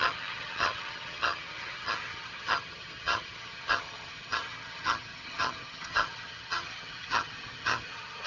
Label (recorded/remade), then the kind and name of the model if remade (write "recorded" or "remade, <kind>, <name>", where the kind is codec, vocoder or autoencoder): remade, vocoder, HiFi-GAN